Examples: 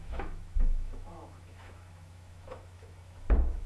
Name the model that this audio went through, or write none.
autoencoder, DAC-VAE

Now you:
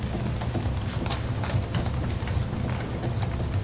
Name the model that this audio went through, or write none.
none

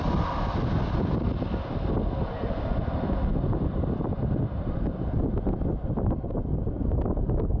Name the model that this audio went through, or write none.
none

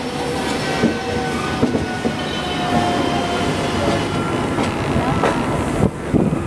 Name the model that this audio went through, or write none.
none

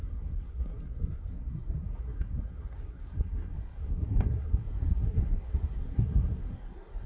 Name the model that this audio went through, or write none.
codec, SNAC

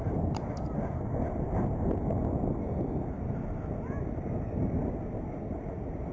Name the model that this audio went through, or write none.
none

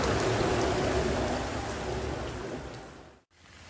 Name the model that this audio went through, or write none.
none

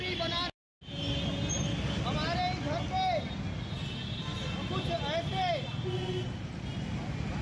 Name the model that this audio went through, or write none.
none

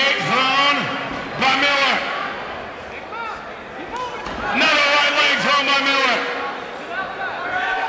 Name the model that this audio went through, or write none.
none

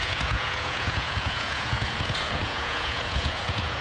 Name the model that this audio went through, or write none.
vocoder, Vocos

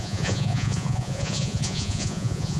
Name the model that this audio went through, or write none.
vocoder, Vocos